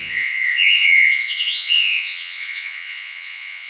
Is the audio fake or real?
fake